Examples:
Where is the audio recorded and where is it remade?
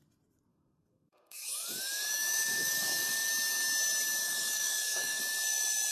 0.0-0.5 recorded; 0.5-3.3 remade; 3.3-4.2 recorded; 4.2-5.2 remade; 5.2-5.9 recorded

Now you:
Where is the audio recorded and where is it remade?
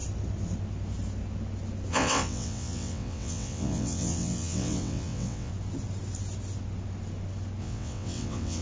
0.0-1.9 recorded; 1.9-5.5 remade; 5.5-7.6 recorded; 7.6-8.6 remade